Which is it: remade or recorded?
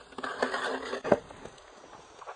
recorded